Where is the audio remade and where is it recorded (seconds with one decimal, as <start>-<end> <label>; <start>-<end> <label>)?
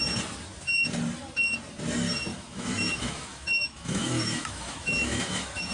0.0-2.3 recorded; 2.3-5.7 remade